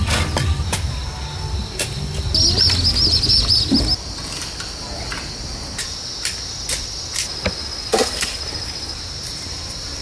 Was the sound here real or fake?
real